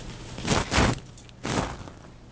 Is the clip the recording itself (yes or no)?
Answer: yes